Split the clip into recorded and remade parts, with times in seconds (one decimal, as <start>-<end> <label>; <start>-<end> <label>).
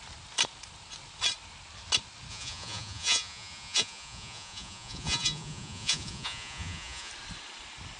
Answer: 0.0-2.3 recorded; 2.3-7.1 remade; 7.1-8.0 recorded